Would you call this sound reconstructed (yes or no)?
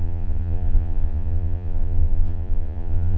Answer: yes